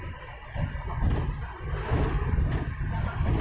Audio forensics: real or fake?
real